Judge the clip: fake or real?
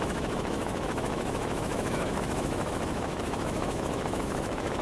fake